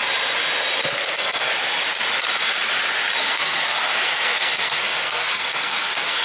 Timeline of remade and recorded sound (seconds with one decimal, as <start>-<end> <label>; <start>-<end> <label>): 0.0-1.1 recorded; 1.1-1.5 remade; 1.5-3.2 recorded; 3.2-6.2 remade